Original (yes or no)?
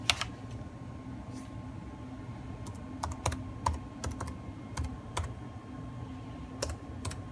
yes